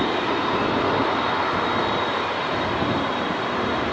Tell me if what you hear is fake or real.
real